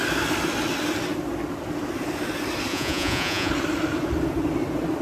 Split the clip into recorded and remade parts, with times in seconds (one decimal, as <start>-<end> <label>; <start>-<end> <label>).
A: 0.0-2.7 recorded; 2.7-3.5 remade; 3.5-5.0 recorded